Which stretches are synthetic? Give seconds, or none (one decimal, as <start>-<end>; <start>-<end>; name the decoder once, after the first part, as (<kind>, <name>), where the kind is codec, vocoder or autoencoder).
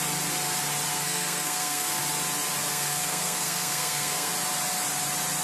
0.9-2.0 (codec, SNAC); 2.7-4.3